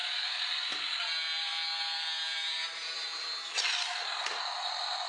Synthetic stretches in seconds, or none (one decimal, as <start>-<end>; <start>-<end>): none